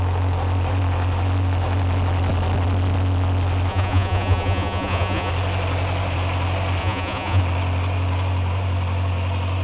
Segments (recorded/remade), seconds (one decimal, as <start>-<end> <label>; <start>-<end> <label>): 0.0-3.7 recorded; 3.7-5.3 remade; 5.3-6.8 recorded; 6.8-7.4 remade; 7.4-9.6 recorded